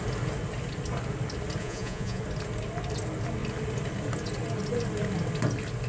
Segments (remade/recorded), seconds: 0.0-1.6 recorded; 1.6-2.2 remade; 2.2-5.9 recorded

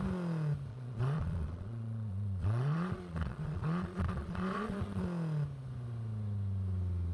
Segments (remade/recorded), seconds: 0.0-0.7 recorded; 0.7-5.0 remade; 5.0-7.1 recorded

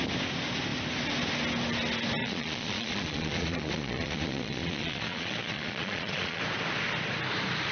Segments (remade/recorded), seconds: 0.0-2.2 recorded; 2.2-6.4 remade; 6.4-7.7 recorded

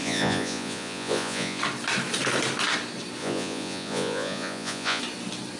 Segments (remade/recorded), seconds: 0.0-1.6 remade; 1.6-3.2 recorded; 3.2-5.0 remade; 5.0-5.6 recorded

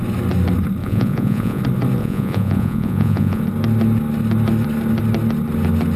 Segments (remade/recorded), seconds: 0.0-0.8 recorded; 0.8-1.6 remade; 1.6-2.0 recorded; 2.0-3.4 remade; 3.4-6.0 recorded